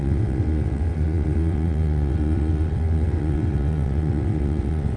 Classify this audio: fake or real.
fake